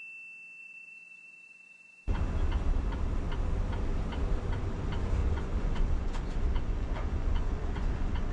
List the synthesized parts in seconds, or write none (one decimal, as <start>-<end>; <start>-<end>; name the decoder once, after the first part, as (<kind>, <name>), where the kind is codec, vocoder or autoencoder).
0.6-2.2 (vocoder, Vocos); 5.2-8.3